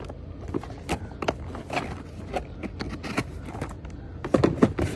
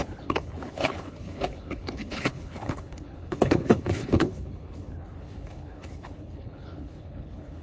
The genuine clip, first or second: first